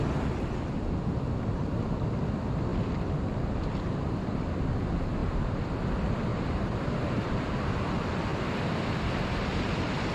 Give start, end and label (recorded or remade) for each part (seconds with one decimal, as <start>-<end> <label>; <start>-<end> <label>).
0.0-5.2 recorded; 5.2-5.7 remade; 5.7-6.3 recorded; 6.3-7.4 remade; 7.4-10.1 recorded